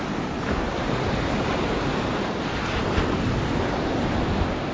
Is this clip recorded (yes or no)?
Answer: yes